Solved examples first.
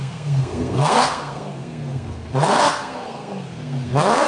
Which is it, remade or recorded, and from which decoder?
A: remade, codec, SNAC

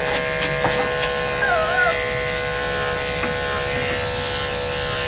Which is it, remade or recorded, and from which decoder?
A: recorded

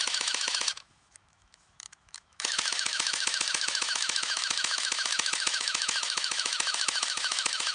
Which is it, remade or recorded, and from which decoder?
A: remade, autoencoder, DAC-VAE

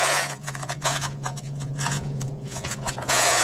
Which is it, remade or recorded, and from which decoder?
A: remade, vocoder, Vocos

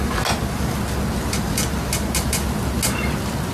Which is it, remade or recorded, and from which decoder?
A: recorded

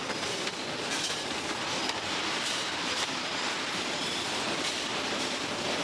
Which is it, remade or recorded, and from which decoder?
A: remade, vocoder, BigVGAN v2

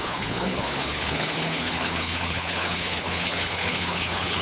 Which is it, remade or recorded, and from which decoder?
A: remade, codec, HILCodec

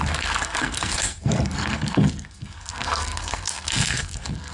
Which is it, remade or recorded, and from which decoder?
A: remade, codec, SNAC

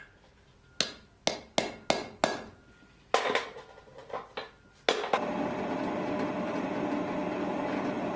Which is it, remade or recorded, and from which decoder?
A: recorded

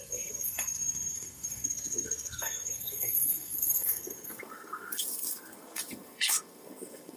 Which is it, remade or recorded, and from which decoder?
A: remade, codec, SNAC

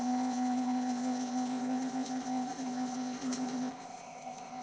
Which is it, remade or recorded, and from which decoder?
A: remade, codec, ZipCodec